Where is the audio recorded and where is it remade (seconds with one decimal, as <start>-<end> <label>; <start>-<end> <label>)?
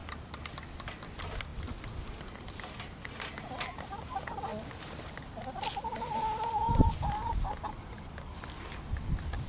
0.0-9.5 recorded